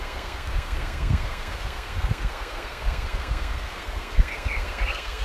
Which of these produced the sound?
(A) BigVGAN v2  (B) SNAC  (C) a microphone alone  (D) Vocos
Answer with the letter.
B